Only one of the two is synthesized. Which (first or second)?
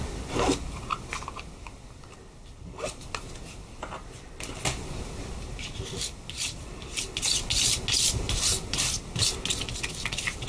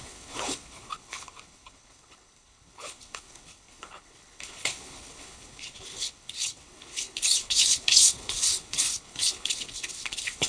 second